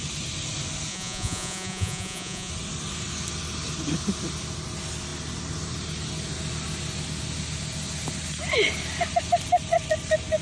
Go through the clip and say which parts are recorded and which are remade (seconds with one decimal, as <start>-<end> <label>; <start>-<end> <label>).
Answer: 0.0-0.9 recorded; 0.9-2.5 remade; 2.5-10.4 recorded